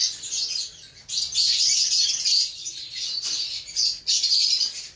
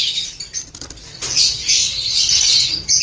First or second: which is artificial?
second